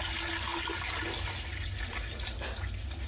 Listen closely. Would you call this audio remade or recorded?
recorded